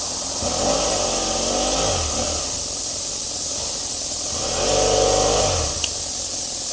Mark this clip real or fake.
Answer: real